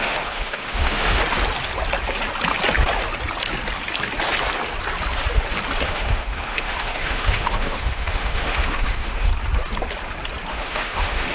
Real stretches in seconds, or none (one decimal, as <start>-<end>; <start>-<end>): 1.2-5.8; 9.3-10.5